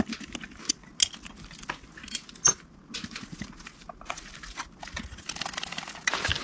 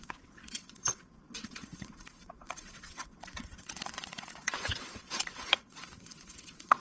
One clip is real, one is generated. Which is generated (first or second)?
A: second